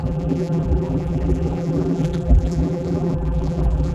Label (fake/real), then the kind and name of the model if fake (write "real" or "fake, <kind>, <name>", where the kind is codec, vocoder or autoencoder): fake, vocoder, BigVGAN v2